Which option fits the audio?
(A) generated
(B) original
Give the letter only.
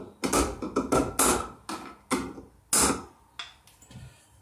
B